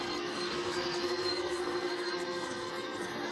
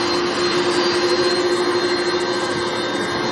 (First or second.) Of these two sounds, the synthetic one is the first